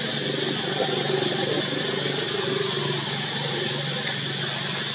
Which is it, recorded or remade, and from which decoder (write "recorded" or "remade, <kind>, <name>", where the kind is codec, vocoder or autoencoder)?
recorded